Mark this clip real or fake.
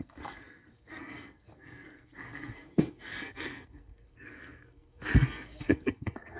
fake